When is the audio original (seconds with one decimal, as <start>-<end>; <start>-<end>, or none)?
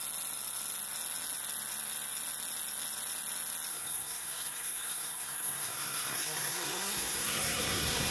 0.0-3.7